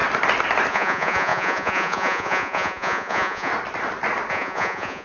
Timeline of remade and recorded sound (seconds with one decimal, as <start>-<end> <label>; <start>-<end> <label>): 0.0-0.7 recorded; 0.7-3.5 remade; 3.5-4.3 recorded; 4.3-5.0 remade